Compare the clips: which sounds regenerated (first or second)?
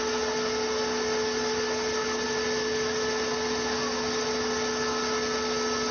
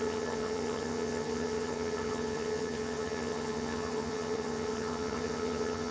second